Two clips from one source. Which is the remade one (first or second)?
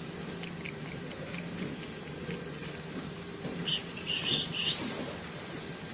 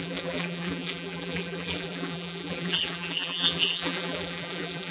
second